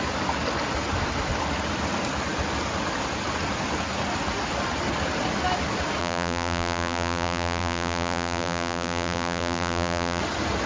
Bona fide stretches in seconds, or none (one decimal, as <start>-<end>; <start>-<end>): 0.0-6.0; 10.2-10.7